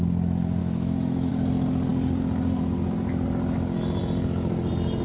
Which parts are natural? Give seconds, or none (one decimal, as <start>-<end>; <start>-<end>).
0.0-0.6; 1.3-5.0